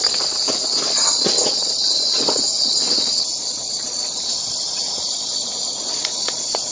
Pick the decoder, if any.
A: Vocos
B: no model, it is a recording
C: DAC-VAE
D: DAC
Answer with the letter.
A